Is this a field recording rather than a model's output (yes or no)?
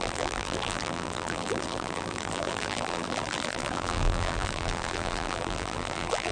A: no